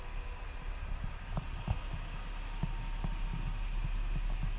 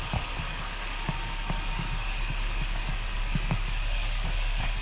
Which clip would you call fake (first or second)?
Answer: second